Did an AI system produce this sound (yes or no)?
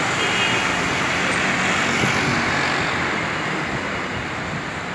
no